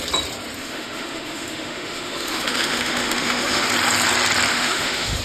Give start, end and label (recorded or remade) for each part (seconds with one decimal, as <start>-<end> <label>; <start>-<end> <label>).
0.0-0.6 recorded; 0.6-3.7 remade; 3.7-4.5 recorded; 4.5-5.2 remade

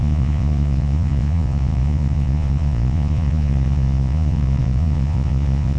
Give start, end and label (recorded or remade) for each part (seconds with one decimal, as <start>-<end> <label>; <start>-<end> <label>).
0.0-5.8 remade